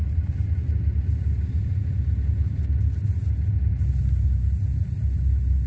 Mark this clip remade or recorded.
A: recorded